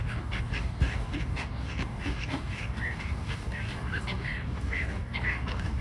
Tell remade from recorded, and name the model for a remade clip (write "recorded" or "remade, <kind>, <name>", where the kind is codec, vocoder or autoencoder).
remade, codec, DAC